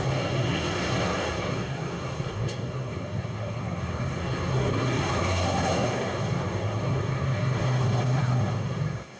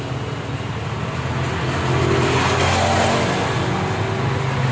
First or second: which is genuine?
second